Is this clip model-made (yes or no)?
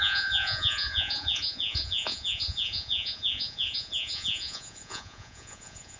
yes